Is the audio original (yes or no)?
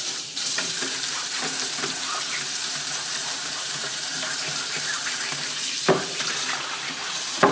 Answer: no